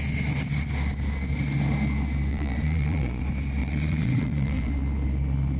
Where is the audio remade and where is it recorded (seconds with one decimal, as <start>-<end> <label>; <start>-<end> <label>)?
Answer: 0.0-2.3 recorded; 2.3-3.2 remade; 3.2-3.6 recorded; 3.6-4.7 remade; 4.7-5.6 recorded